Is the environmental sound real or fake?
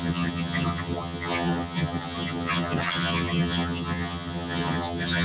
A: fake